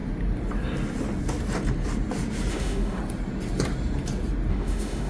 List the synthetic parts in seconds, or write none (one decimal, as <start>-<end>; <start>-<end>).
2.5-3.0; 4.5-5.1